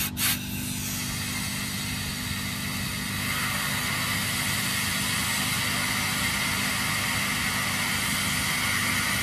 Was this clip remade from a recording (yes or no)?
no